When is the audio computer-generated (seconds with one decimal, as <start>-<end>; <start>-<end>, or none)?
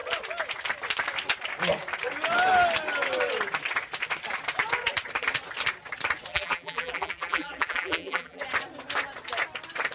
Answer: 6.3-8.4